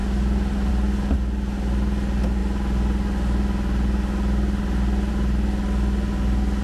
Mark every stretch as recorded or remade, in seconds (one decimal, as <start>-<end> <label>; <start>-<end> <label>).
0.0-6.6 recorded

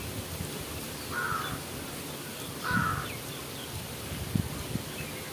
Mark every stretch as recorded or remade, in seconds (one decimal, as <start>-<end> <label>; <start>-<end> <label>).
0.0-5.3 recorded

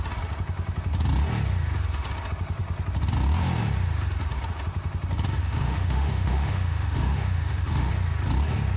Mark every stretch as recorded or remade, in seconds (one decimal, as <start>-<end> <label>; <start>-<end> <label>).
0.0-5.4 recorded; 5.4-7.9 remade; 7.9-8.8 recorded

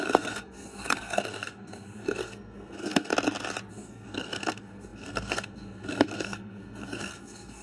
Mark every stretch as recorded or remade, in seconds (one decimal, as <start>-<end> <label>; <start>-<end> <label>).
0.0-3.1 remade; 3.1-3.7 recorded; 3.7-7.6 remade